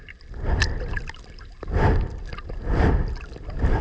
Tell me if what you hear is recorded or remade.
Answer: recorded